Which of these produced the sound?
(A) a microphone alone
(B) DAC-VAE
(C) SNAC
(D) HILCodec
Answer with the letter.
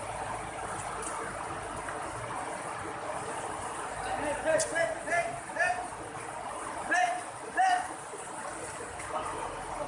A